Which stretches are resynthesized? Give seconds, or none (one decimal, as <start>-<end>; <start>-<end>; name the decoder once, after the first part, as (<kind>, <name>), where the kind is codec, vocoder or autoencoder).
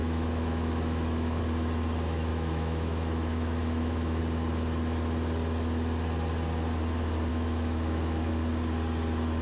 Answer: 0.0-1.4 (autoencoder, DAC-VAE); 2.3-4.2; 7.3-8.3